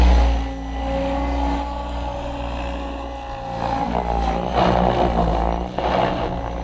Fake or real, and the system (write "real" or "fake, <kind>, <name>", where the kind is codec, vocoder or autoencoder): real